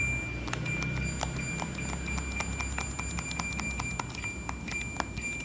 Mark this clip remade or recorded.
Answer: recorded